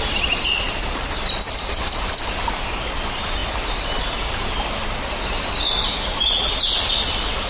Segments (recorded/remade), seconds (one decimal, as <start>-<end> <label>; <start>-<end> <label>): 0.0-7.5 recorded